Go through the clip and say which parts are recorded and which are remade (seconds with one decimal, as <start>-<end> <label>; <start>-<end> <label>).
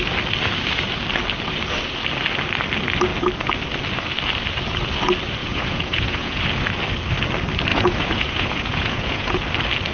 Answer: 0.0-5.4 recorded; 5.4-6.4 remade; 6.4-7.7 recorded; 7.7-9.4 remade; 9.4-9.9 recorded